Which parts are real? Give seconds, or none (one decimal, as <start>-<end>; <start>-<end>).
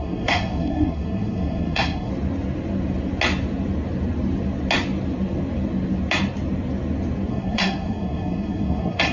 2.1-7.3